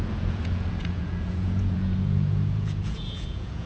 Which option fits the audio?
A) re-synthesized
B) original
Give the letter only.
A